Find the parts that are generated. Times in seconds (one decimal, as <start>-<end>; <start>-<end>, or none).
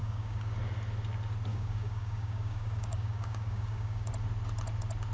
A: 0.0-0.6; 1.5-4.1